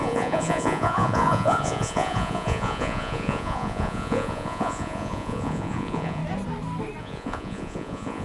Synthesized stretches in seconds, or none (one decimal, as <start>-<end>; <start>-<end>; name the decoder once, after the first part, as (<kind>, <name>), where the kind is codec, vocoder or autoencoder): 0.0-6.2 (vocoder, Vocos); 7.0-8.2